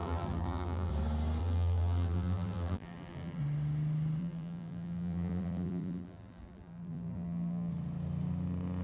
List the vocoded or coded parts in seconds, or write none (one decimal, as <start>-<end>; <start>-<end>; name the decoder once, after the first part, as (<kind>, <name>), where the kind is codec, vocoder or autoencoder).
0.0-0.9 (vocoder, BigVGAN v2); 1.4-3.4; 4.2-7.7